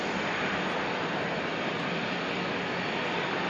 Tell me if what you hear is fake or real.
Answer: fake